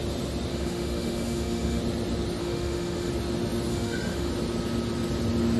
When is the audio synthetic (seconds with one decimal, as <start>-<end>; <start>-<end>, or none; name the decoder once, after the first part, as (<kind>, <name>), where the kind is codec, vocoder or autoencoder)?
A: 0.5-1.8 (autoencoder, DAC-VAE); 2.4-3.1; 3.7-4.3